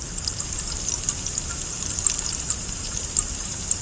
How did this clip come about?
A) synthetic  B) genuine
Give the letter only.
B